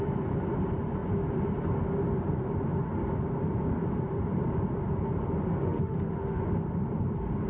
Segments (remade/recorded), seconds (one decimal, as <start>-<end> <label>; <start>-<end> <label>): 0.0-5.6 recorded; 5.6-6.4 remade; 6.4-7.5 recorded